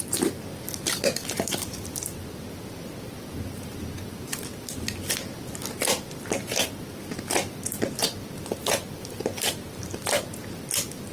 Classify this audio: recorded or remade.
recorded